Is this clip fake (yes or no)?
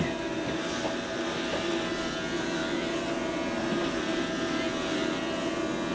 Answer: no